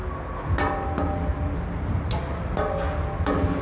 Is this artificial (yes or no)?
no